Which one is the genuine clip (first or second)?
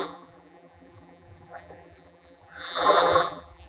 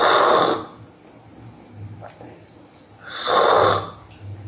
second